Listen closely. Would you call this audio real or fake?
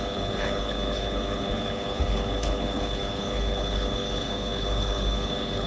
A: fake